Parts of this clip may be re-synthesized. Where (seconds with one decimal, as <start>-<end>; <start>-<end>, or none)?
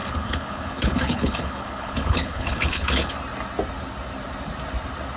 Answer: 0.0-3.1